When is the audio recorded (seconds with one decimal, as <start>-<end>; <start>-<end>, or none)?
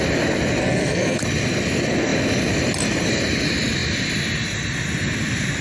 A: 0.0-0.6; 1.2-5.6